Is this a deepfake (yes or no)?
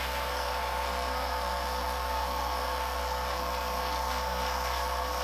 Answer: yes